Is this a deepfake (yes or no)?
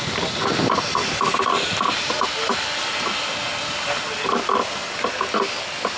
no